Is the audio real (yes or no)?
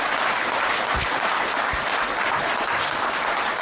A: yes